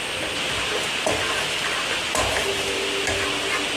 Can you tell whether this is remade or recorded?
recorded